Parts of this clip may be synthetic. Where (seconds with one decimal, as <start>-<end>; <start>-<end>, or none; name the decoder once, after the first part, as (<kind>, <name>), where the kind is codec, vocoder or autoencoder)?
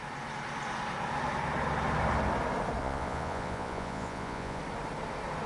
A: 2.8-4.6 (vocoder, Vocos)